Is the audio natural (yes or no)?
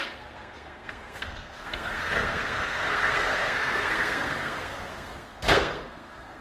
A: no